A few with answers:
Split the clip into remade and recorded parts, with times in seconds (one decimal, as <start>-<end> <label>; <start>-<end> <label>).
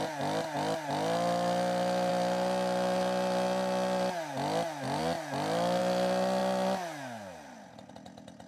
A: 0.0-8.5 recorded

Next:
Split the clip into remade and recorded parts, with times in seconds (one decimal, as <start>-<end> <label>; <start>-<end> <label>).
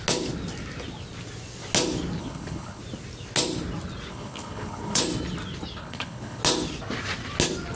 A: 0.0-2.2 recorded; 2.2-2.8 remade; 2.8-4.1 recorded; 4.1-5.0 remade; 5.0-5.8 recorded; 5.8-6.4 remade; 6.4-7.8 recorded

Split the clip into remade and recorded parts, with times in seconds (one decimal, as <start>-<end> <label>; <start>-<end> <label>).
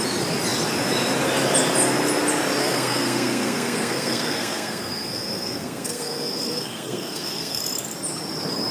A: 0.0-2.6 recorded; 2.6-7.6 remade; 7.6-8.7 recorded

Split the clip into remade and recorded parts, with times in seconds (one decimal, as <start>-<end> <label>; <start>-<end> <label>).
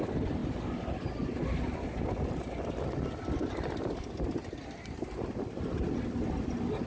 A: 0.0-6.9 recorded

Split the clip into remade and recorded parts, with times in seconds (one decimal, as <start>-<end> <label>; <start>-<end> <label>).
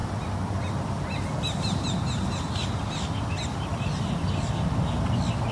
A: 0.0-5.5 recorded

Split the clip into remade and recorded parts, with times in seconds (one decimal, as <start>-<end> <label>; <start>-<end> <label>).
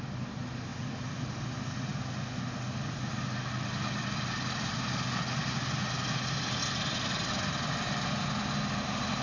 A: 0.0-9.2 recorded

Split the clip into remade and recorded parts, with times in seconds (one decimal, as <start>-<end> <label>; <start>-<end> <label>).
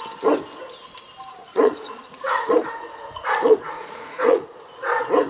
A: 0.0-1.4 recorded; 1.4-4.6 remade; 4.6-5.3 recorded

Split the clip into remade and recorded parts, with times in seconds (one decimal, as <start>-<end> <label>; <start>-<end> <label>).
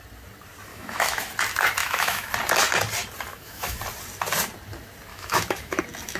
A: 0.0-0.7 recorded; 0.7-1.2 remade; 1.2-1.8 recorded; 1.8-2.3 remade; 2.3-3.3 recorded; 3.3-3.8 remade; 3.8-5.1 recorded; 5.1-5.8 remade; 5.8-6.2 recorded